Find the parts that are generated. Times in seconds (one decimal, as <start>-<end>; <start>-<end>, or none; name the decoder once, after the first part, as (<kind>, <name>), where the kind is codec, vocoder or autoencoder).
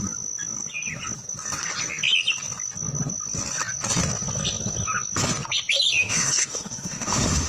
6.0-7.5 (autoencoder, DAC-VAE)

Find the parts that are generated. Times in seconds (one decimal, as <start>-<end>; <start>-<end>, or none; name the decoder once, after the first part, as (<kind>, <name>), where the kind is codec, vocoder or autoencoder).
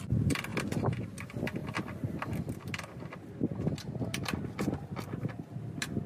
none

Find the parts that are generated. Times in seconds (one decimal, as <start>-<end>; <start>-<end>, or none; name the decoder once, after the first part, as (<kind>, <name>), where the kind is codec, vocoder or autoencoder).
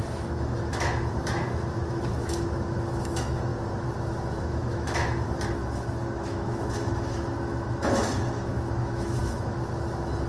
0.0-10.3 (autoencoder, DAC-VAE)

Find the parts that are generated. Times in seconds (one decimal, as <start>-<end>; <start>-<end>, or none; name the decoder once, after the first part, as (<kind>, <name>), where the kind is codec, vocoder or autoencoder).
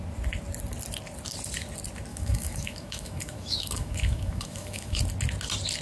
2.1-5.0 (autoencoder, DAC-VAE)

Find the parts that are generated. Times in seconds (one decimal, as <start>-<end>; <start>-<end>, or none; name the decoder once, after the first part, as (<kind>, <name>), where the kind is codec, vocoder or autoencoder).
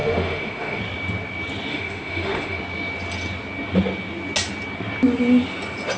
0.0-0.8 (autoencoder, DAC-VAE); 1.7-2.6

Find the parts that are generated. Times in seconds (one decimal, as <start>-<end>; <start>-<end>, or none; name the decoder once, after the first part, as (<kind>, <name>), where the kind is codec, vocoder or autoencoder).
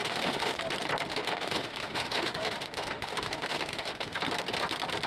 0.0-0.6 (autoencoder, DAC-VAE); 1.1-4.2